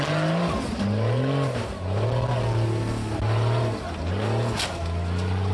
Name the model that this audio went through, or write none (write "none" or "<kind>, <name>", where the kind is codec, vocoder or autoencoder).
none